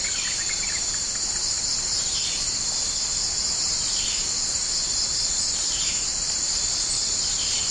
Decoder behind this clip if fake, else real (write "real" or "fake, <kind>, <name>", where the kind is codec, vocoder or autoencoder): real